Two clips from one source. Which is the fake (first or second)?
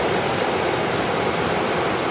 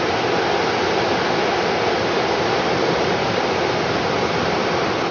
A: first